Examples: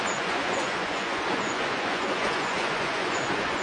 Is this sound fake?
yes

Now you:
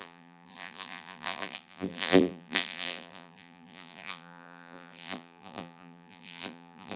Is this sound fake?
yes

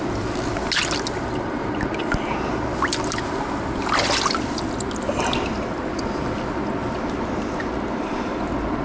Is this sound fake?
no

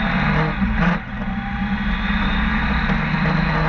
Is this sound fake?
no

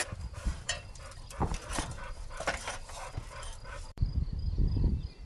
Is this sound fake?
yes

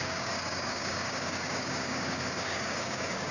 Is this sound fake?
yes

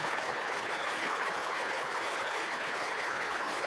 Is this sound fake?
yes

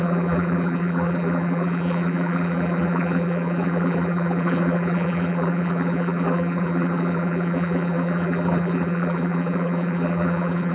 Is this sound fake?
yes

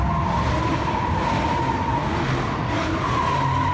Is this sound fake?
no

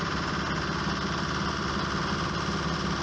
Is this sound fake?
no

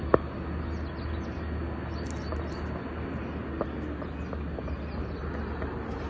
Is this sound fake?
no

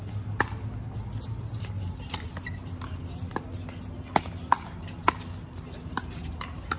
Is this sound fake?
no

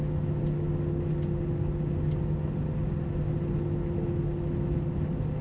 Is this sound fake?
no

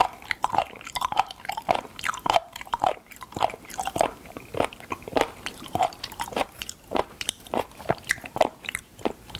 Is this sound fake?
yes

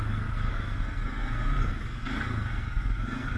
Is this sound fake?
yes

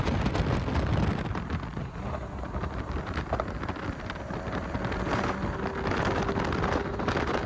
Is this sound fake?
no